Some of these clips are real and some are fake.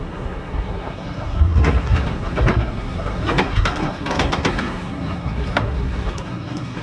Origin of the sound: fake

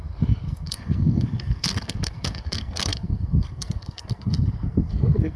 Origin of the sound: fake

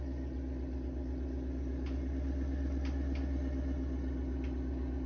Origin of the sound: real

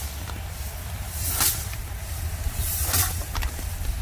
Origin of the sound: real